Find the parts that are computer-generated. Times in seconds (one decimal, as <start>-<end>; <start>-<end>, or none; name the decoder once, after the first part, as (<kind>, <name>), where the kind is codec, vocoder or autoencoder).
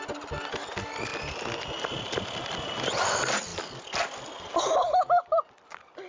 none